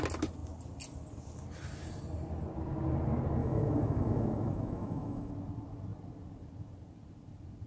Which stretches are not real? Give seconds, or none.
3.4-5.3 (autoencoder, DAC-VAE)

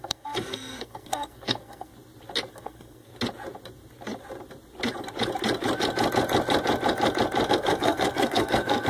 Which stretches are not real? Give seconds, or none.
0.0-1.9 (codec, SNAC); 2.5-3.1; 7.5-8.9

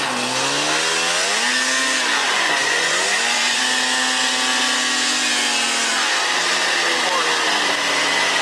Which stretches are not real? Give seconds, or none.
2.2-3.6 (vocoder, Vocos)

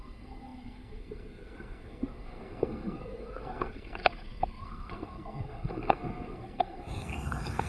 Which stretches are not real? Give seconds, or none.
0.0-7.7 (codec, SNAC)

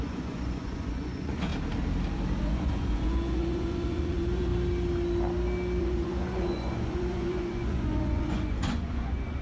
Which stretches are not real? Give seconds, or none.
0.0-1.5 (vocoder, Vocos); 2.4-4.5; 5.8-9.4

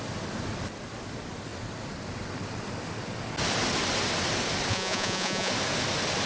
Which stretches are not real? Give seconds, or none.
4.7-5.5 (vocoder, Vocos)